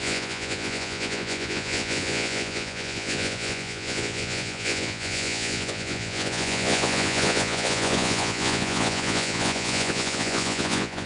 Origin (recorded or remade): remade